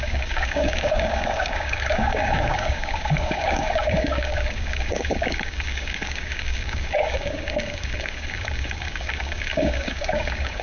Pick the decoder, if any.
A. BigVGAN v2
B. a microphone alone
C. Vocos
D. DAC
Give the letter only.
D